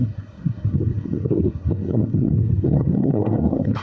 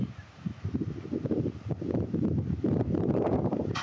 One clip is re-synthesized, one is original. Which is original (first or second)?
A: second